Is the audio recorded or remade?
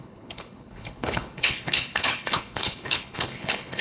remade